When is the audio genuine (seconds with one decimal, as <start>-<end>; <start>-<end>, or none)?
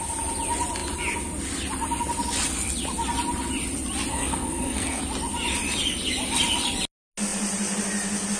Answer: 0.0-4.1; 5.0-8.4